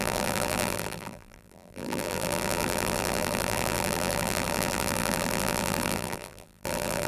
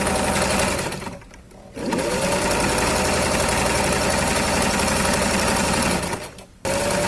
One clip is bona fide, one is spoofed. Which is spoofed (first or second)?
first